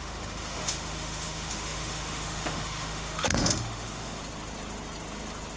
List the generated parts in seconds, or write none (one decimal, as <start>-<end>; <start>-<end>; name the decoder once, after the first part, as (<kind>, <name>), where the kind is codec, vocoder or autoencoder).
0.0-4.2 (autoencoder, DAC-VAE)